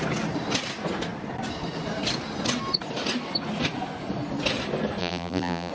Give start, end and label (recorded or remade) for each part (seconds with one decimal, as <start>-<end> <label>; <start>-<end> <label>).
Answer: 0.0-5.0 recorded; 5.0-5.7 remade